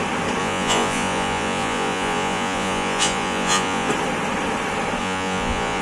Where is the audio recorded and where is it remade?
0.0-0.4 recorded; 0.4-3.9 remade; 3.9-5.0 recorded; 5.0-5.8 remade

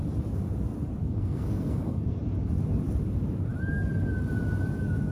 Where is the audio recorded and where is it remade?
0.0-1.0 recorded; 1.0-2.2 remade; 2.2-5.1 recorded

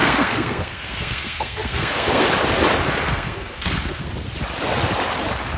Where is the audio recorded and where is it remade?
0.0-2.2 remade; 2.2-3.0 recorded; 3.0-4.1 remade; 4.1-5.6 recorded

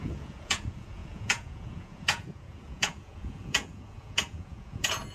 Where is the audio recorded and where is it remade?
0.0-5.1 remade

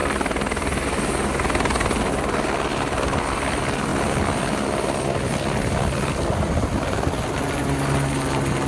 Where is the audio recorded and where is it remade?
0.0-8.7 recorded

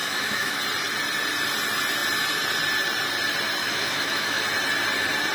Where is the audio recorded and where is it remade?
0.0-0.6 remade; 0.6-3.6 recorded; 3.6-4.4 remade; 4.4-5.3 recorded

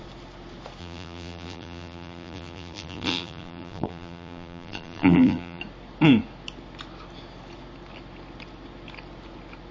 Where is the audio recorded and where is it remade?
0.0-0.8 recorded; 0.8-5.6 remade; 5.6-9.7 recorded

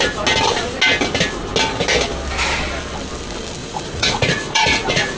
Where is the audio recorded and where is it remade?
0.0-3.6 recorded; 3.6-5.2 remade